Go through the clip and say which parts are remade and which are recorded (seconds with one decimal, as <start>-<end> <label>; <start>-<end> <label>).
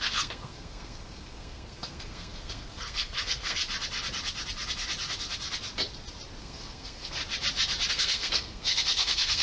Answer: 0.0-3.6 remade; 3.6-6.4 recorded; 6.4-7.2 remade; 7.2-7.9 recorded; 7.9-9.4 remade